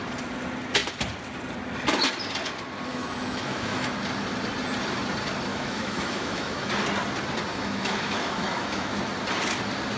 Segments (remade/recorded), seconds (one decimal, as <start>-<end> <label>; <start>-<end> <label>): 0.0-2.9 recorded; 2.9-3.9 remade; 3.9-5.5 recorded; 5.5-6.7 remade; 6.7-7.5 recorded; 7.5-9.0 remade; 9.0-10.0 recorded